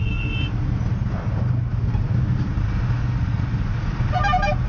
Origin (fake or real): real